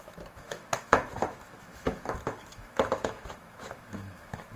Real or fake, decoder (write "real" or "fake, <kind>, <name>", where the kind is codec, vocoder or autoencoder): fake, autoencoder, DAC-VAE